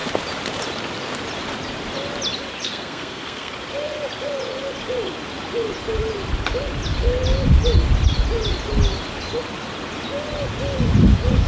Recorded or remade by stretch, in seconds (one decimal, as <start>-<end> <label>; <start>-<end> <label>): 0.0-2.6 recorded; 2.6-3.5 remade; 3.5-11.5 recorded